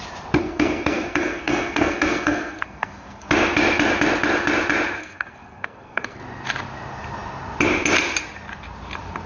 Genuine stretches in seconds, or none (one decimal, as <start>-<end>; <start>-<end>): 0.0-0.4; 3.3-5.0; 6.2-9.3